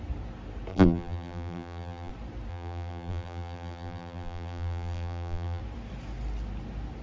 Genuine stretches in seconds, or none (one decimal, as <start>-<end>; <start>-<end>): 0.0-0.7; 2.1-2.5; 5.6-7.0